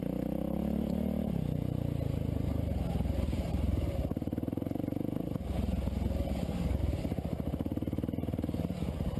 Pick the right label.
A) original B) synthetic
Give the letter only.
A